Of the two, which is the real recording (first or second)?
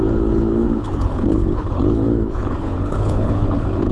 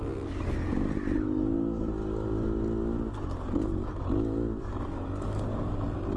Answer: second